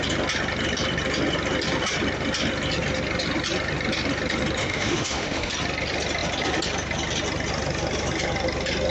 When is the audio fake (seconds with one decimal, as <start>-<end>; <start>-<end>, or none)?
4.6-5.5

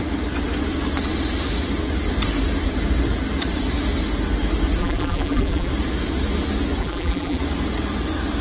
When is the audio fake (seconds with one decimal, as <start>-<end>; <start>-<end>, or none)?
4.8-5.7; 6.8-7.4

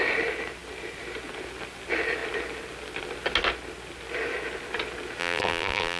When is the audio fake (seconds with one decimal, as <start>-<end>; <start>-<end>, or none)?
5.2-6.0

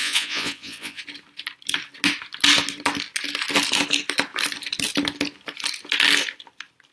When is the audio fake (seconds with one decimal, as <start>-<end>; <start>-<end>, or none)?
0.0-1.0

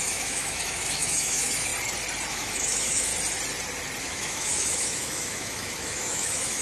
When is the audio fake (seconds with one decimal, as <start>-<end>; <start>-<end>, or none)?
0.0-1.7; 2.3-3.1; 4.0-6.6

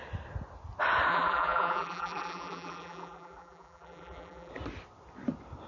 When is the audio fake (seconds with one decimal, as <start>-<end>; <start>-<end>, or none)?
1.1-4.5

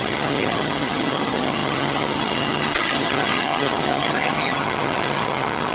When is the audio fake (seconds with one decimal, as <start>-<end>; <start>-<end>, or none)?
0.0-5.7

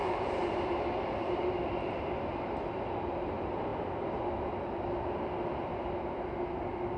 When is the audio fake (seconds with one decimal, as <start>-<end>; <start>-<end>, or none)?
0.0-2.1; 3.7-7.0